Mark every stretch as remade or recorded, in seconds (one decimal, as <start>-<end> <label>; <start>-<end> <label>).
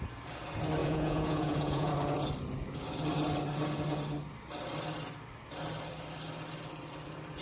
0.0-0.8 recorded; 0.8-1.9 remade; 1.9-7.4 recorded